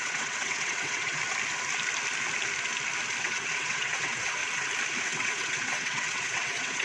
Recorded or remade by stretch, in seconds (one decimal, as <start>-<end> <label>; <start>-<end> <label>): 0.0-1.2 remade; 1.2-3.2 recorded; 3.2-4.4 remade; 4.4-5.0 recorded; 5.0-6.8 remade